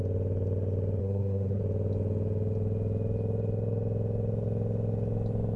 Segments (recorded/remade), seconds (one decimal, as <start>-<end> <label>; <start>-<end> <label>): 0.0-1.0 recorded; 1.0-1.6 remade; 1.6-5.6 recorded